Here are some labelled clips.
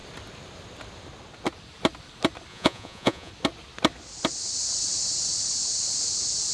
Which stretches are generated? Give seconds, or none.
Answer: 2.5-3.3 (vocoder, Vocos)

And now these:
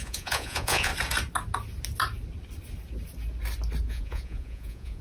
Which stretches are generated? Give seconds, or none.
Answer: 0.0-0.9 (vocoder, Vocos); 3.9-5.0

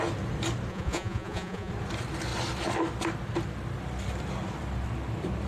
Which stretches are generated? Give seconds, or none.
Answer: 0.7-1.7 (vocoder, Vocos)

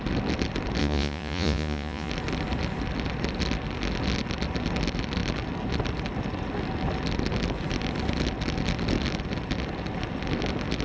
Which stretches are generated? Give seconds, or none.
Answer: 0.8-2.1 (vocoder, Vocos)

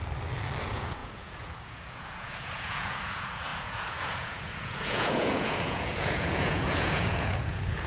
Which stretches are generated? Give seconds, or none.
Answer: 0.6-7.9 (vocoder, Vocos)

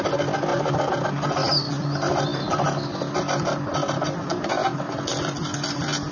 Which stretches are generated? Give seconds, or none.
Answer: none